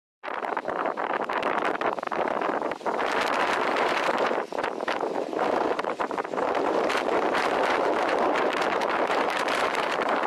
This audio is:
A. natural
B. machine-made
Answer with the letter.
B